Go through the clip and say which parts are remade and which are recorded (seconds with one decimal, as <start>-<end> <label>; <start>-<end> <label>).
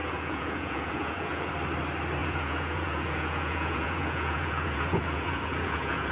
0.0-1.5 remade; 1.5-2.2 recorded; 2.2-6.1 remade